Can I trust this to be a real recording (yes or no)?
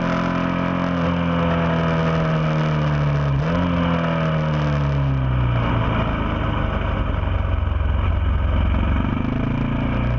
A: yes